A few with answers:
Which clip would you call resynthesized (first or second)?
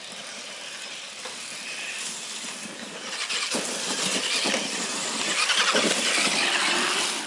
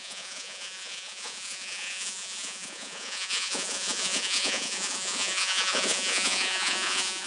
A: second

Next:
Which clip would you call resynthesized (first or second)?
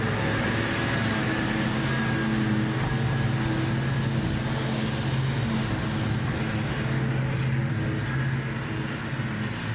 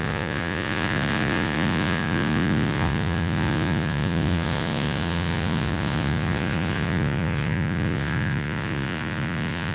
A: second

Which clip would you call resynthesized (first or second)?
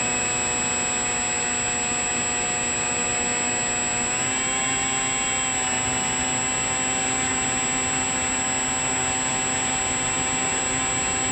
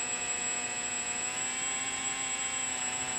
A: second